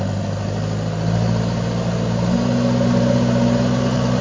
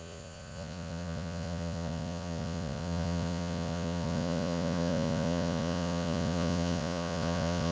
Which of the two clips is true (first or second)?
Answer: first